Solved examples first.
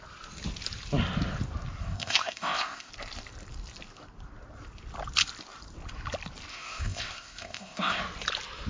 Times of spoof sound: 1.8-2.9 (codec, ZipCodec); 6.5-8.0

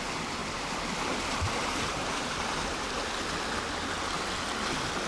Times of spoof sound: 0.4-2.9 (vocoder, BigVGAN v2)

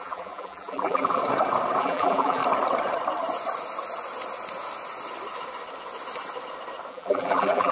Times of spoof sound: 0.0-1.2 (vocoder, BigVGAN v2); 1.8-2.4; 6.9-7.7

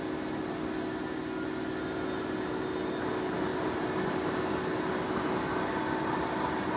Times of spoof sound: none

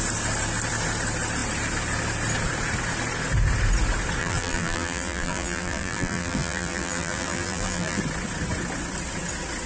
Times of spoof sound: 4.2-8.0 (vocoder, BigVGAN v2)

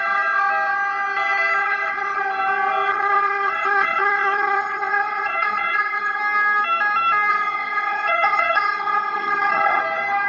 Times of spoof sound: 1.6-2.2 (vocoder, HiFi-GAN); 2.9-6.2; 7.3-9.8